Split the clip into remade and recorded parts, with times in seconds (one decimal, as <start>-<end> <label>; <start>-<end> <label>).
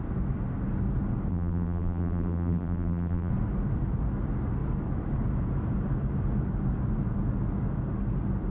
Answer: 0.0-1.3 recorded; 1.3-3.3 remade; 3.3-8.5 recorded